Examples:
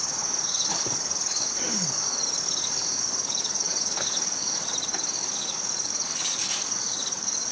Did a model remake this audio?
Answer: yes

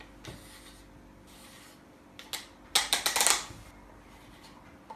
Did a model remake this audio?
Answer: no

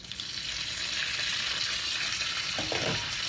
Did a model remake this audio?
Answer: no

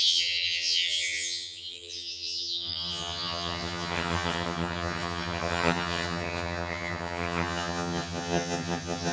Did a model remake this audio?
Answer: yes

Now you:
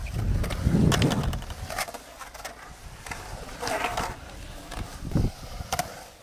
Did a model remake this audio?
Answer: no